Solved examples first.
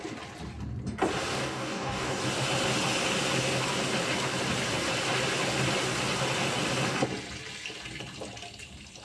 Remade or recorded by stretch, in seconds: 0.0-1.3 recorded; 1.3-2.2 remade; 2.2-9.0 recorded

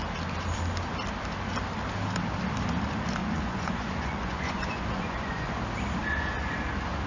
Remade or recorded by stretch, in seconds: 0.0-3.2 recorded; 3.2-5.6 remade; 5.6-6.0 recorded; 6.0-6.6 remade; 6.6-7.1 recorded

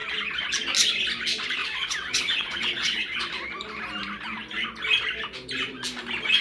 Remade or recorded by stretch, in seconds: 0.0-1.6 recorded; 1.6-3.2 remade; 3.2-6.4 recorded

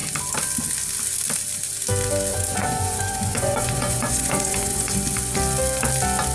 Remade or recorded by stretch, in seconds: 0.0-2.3 recorded; 2.3-4.9 remade; 4.9-6.3 recorded

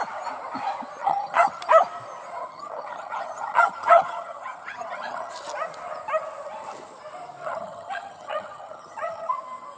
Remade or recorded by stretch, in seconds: 0.0-1.0 recorded; 1.0-1.6 remade; 1.6-2.4 recorded; 2.4-5.3 remade; 5.3-7.4 recorded; 7.4-9.3 remade; 9.3-9.8 recorded

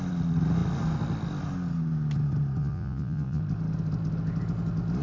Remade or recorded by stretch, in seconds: 0.0-2.6 recorded; 2.6-3.4 remade; 3.4-5.0 recorded

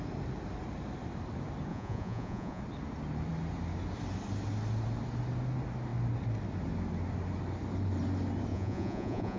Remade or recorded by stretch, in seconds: 0.0-1.7 recorded; 1.7-2.6 remade; 2.6-8.5 recorded; 8.5-9.4 remade

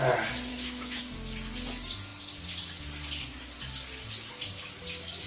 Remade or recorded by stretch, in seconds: 0.0-0.5 recorded; 0.5-1.0 remade; 1.0-5.3 recorded